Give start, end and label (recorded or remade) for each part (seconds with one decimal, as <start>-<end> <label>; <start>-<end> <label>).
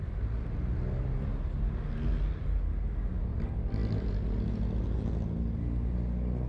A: 0.0-6.5 recorded